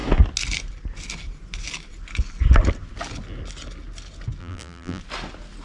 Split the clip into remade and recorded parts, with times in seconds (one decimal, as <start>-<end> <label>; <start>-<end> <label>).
0.0-4.4 recorded; 4.4-5.0 remade; 5.0-5.6 recorded